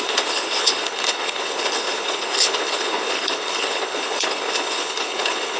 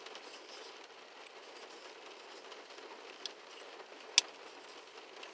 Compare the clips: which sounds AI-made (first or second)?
first